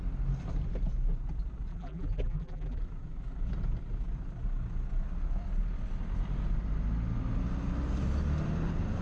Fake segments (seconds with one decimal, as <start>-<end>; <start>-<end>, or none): 1.7-2.8